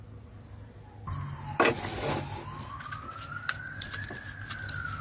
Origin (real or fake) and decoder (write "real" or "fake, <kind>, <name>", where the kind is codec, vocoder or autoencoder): real